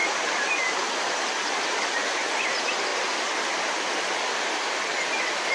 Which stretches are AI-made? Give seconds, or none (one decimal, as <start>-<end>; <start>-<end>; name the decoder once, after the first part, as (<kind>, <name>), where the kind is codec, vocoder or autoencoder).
none